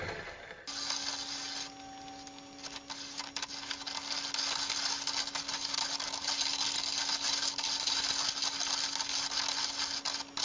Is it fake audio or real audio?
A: real